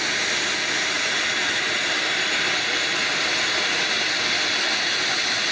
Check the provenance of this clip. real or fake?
real